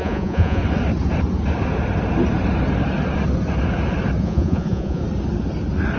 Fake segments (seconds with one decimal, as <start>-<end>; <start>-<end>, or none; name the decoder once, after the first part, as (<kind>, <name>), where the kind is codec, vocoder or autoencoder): 0.0-0.6 (vocoder, Vocos); 4.2-5.0